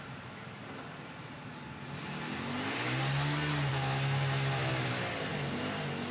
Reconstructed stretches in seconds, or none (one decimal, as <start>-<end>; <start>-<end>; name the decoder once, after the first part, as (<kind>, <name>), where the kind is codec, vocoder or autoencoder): none